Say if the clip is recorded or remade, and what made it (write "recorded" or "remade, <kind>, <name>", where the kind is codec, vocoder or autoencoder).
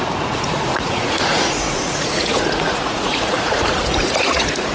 remade, vocoder, Vocos